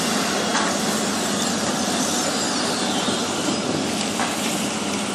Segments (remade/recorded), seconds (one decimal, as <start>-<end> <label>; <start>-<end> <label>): 0.0-5.1 recorded